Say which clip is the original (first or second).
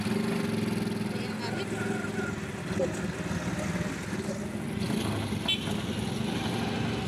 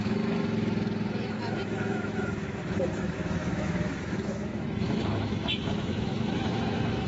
first